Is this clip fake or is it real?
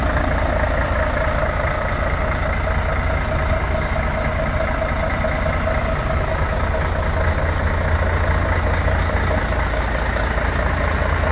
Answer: real